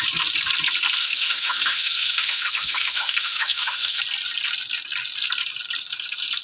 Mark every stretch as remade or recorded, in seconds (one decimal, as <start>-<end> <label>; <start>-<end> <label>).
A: 0.0-1.0 recorded; 1.0-4.0 remade; 4.0-6.4 recorded